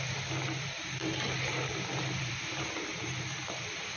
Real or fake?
fake